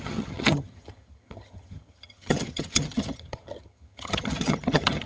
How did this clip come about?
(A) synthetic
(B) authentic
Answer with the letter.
A